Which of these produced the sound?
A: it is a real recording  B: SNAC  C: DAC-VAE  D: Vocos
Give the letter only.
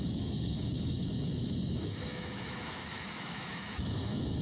C